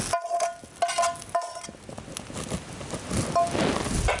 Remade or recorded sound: recorded